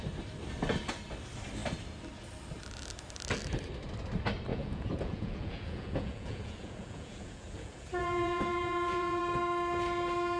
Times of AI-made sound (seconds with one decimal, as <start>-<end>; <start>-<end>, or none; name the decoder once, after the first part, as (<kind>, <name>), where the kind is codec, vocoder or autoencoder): 4.5-9.2 (vocoder, Vocos)

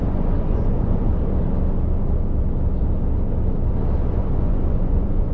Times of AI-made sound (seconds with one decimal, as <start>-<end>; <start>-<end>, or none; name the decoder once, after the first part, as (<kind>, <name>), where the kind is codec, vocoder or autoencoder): 0.0-1.1 (vocoder, Vocos); 4.1-5.3

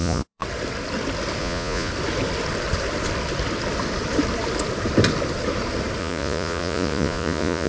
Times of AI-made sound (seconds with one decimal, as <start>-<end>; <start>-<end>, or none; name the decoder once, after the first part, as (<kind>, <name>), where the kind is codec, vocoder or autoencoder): 0.0-0.4 (vocoder, Vocos); 1.4-1.9; 6.0-7.7

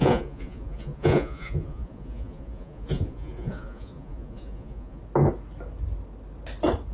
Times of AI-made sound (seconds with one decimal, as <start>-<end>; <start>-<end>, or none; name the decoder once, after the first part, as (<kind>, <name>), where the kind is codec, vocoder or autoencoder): 0.0-5.0 (vocoder, Vocos)